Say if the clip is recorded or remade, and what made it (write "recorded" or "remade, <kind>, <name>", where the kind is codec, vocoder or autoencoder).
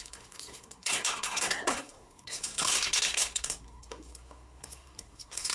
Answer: remade, codec, SNAC